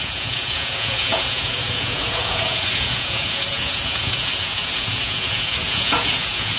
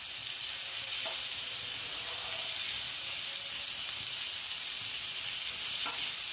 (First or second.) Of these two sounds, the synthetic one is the first